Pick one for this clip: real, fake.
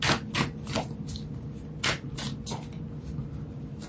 real